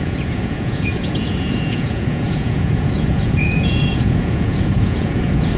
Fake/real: fake